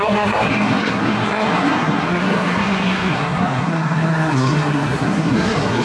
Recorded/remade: remade